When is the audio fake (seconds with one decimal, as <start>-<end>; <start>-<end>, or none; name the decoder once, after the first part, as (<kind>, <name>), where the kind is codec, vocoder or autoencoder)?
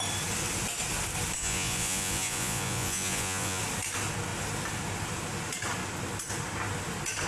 1.4-3.6 (vocoder, Vocos)